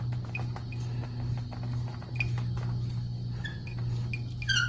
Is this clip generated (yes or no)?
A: no